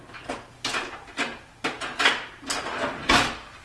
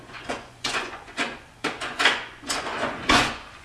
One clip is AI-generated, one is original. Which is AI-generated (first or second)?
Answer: second